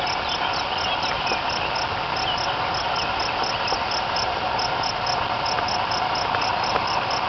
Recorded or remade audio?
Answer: recorded